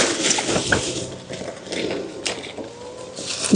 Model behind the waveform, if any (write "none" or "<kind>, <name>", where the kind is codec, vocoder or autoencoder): none